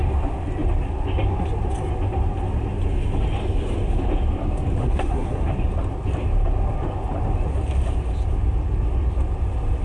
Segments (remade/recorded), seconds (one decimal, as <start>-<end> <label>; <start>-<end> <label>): 0.0-4.8 recorded; 4.8-5.5 remade; 5.5-9.8 recorded